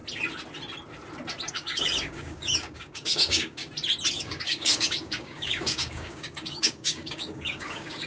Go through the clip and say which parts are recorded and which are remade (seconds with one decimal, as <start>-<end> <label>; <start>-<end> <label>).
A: 0.0-1.5 recorded; 1.5-3.6 remade; 3.6-4.1 recorded; 4.1-8.1 remade